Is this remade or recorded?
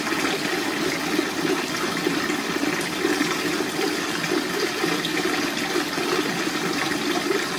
recorded